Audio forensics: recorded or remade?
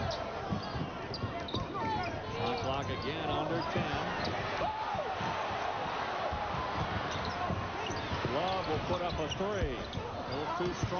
recorded